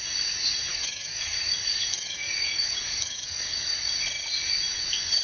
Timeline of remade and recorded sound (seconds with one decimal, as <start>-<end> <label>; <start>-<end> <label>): 0.0-0.7 recorded; 0.7-3.8 remade; 3.8-5.2 recorded

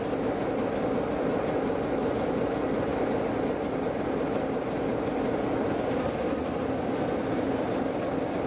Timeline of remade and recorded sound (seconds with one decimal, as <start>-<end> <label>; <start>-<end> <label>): 0.0-8.5 recorded

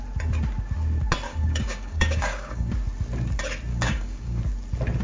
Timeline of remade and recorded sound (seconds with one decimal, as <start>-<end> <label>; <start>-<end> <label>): 0.0-1.3 recorded; 1.3-2.7 remade; 2.7-3.7 recorded; 3.7-4.4 remade; 4.4-5.0 recorded

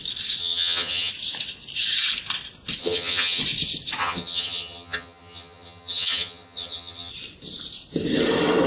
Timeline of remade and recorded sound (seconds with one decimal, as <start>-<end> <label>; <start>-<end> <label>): 0.0-0.4 recorded; 0.4-1.1 remade; 1.1-2.8 recorded; 2.8-3.4 remade; 3.4-4.0 recorded; 4.0-7.1 remade; 7.1-8.7 recorded

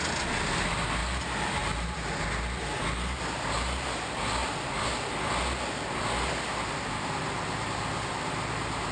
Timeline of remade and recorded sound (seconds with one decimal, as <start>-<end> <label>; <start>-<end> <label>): 0.0-8.9 recorded

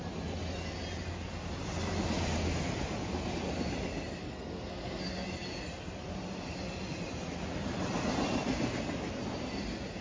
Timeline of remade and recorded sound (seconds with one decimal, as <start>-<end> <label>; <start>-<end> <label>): 0.0-4.2 recorded; 4.2-5.0 remade; 5.0-10.0 recorded